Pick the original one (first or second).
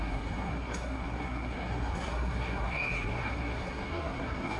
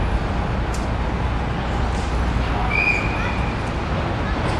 second